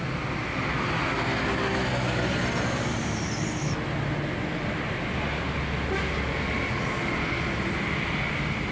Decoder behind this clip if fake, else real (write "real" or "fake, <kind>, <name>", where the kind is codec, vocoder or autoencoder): real